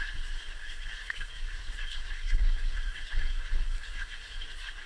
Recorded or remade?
remade